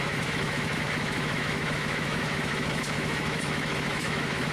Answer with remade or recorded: remade